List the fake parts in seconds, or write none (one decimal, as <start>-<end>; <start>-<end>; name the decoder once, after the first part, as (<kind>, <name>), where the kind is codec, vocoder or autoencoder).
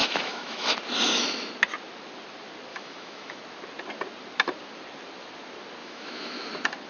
0.0-0.7 (autoencoder, DAC-VAE); 2.7-3.4; 5.8-6.5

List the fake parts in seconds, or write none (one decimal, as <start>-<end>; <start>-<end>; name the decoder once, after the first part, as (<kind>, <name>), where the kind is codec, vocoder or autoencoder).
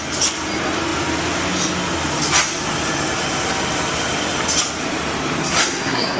5.4-6.2 (codec, SNAC)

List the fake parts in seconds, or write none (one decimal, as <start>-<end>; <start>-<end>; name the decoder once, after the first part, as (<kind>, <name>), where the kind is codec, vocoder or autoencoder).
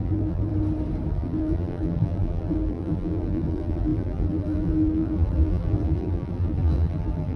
0.0-0.5 (vocoder, BigVGAN v2); 1.1-7.4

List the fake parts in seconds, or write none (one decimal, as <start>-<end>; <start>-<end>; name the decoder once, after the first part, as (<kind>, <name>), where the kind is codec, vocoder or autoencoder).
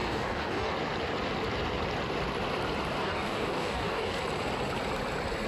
0.0-0.7 (codec, DAC); 3.0-4.2